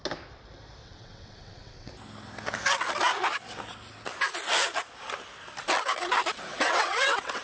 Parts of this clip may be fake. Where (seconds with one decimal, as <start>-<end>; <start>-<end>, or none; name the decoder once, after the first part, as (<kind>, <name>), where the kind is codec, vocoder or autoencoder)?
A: 0.8-1.9 (vocoder, WaveNeXt); 6.5-7.4